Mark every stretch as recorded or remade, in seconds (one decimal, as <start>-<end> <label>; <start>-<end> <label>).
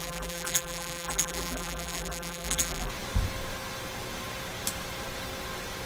0.0-2.9 remade; 2.9-5.9 recorded